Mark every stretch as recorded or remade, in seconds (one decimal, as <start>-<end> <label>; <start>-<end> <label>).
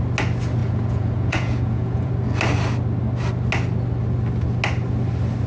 0.0-0.6 recorded; 0.6-2.1 remade; 2.1-5.5 recorded